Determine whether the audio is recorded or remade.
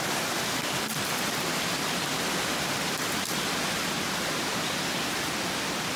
remade